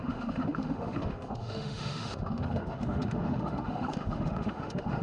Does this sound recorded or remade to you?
remade